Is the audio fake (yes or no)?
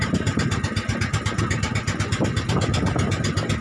no